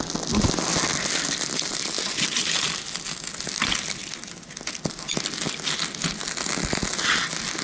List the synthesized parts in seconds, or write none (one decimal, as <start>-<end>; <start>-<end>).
none